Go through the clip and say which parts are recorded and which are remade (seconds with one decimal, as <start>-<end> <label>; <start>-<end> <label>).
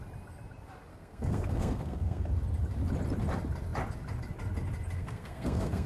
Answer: 0.0-0.9 recorded; 0.9-2.3 remade; 2.3-5.0 recorded; 5.0-5.9 remade